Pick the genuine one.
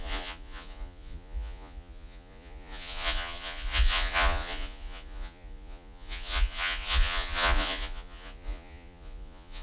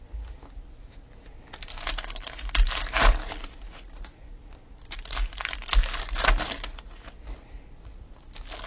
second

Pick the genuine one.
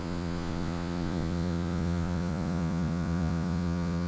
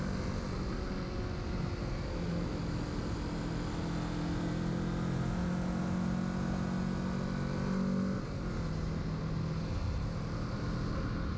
second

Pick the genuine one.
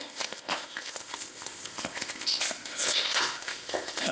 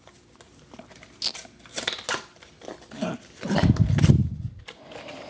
second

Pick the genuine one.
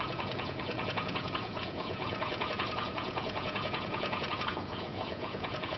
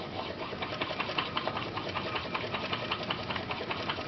second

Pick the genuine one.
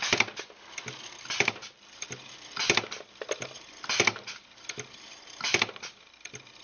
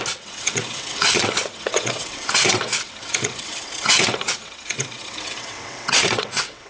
first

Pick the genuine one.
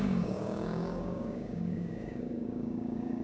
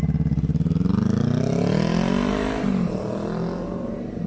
second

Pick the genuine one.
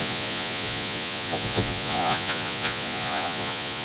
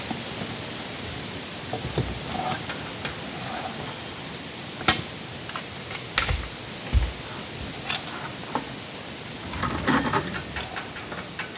second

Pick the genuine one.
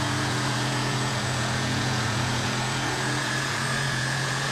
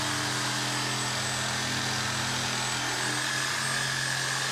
second